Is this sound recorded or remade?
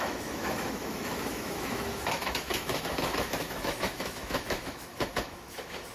remade